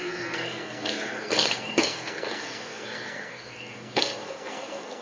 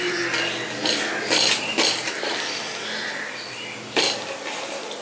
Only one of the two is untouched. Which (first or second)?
second